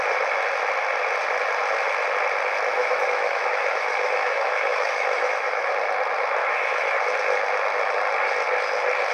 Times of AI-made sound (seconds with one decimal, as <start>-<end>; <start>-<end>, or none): 2.8-5.7; 6.4-7.0